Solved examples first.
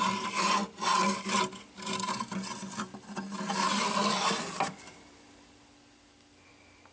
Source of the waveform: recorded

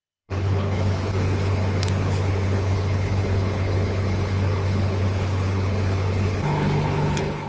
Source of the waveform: remade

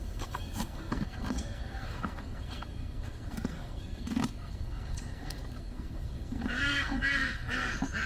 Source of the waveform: remade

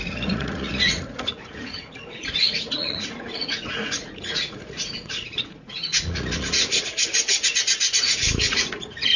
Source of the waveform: remade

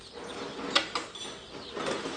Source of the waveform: recorded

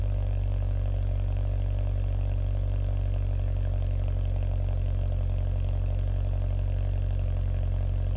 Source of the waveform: recorded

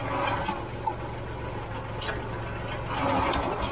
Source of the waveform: recorded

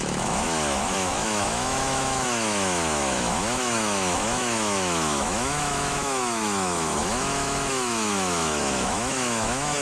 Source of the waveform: remade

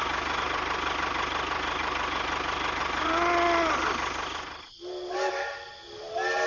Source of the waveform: recorded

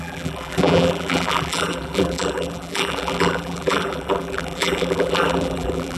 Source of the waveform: remade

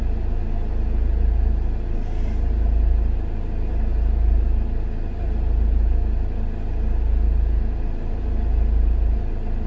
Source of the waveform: recorded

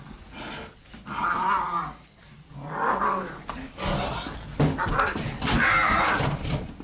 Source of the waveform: recorded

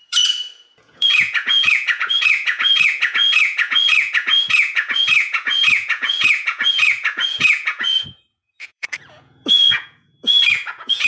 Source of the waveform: remade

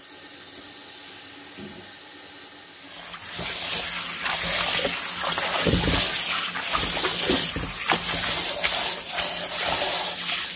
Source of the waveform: recorded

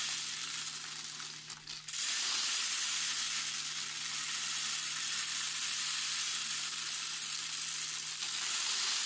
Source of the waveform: recorded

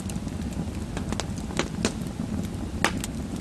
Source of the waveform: recorded